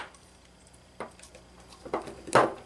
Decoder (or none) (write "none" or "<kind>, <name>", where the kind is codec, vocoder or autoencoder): none